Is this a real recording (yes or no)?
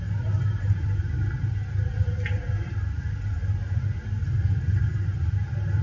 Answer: yes